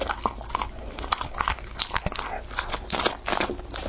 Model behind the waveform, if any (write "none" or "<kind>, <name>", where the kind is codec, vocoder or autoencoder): none